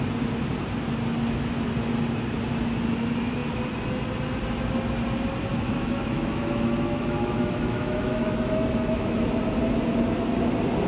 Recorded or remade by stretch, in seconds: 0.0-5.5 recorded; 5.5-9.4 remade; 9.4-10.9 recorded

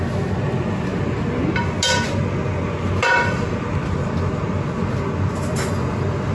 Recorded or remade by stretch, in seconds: 0.0-6.3 recorded

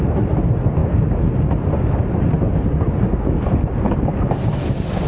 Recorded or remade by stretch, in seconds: 0.0-5.1 recorded

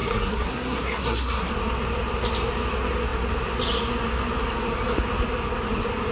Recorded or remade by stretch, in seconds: 0.0-1.5 remade; 1.5-6.1 recorded

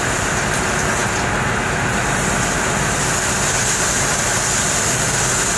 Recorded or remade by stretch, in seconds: 0.0-5.6 recorded

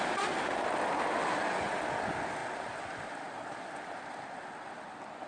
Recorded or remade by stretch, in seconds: 0.0-2.4 recorded; 2.4-5.3 remade